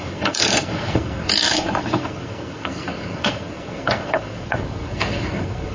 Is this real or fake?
fake